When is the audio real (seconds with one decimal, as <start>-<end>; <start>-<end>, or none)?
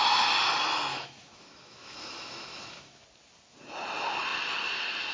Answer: 0.0-0.9; 3.0-5.1